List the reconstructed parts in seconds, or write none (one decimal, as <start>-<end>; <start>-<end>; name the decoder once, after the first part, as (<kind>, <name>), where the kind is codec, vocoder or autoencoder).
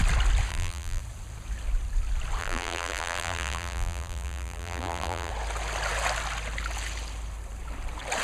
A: 0.5-1.0 (vocoder, BigVGAN v2); 2.4-5.3